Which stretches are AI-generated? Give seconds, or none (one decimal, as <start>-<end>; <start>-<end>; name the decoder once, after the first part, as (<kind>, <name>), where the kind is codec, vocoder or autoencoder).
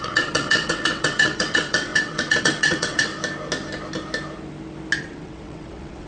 0.0-3.1 (vocoder, WaveNeXt); 5.0-6.1